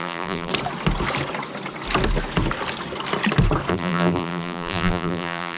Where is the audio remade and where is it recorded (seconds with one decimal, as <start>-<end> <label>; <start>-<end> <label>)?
0.0-0.5 remade; 0.5-3.7 recorded; 3.7-5.6 remade